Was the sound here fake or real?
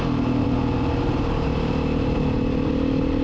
real